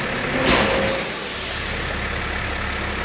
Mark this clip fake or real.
real